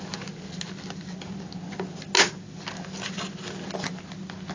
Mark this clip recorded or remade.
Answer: recorded